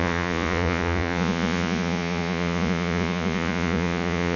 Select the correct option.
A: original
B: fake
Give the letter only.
B